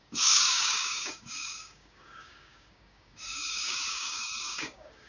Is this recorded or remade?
remade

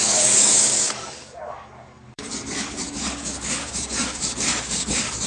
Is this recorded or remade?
remade